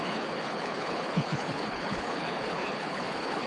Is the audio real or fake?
fake